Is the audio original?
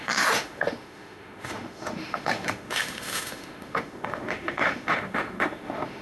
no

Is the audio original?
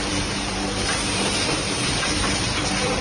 no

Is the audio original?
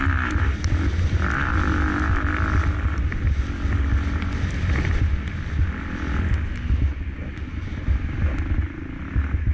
yes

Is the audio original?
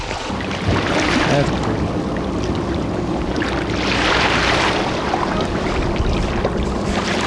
yes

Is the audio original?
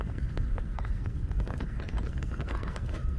no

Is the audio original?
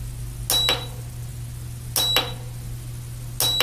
yes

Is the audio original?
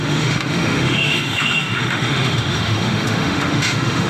no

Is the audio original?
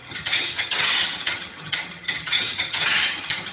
no